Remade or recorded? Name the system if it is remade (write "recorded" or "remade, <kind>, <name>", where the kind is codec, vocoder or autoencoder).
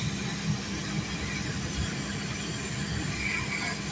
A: recorded